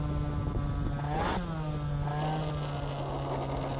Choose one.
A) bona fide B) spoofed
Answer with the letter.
A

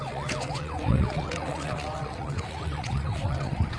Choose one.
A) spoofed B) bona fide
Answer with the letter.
A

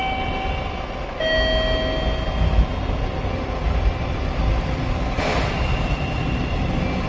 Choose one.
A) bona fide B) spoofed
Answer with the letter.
A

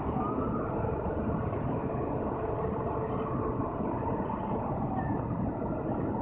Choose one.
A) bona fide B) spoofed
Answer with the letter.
A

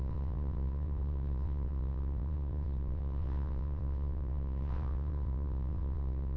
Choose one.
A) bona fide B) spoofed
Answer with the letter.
B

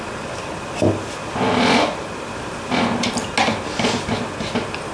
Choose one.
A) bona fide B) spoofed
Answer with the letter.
A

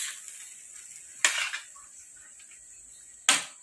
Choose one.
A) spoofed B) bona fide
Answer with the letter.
B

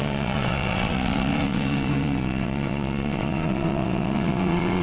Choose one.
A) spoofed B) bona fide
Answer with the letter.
A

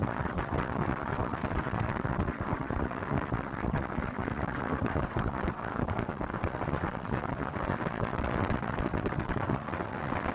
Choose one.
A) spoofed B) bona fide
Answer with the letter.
A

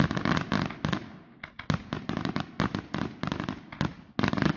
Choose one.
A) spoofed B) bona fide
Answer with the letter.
B